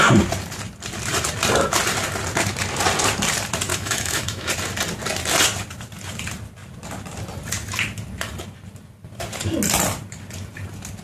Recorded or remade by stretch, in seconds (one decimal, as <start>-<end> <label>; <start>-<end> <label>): 0.0-3.7 recorded; 3.7-4.5 remade; 4.5-11.0 recorded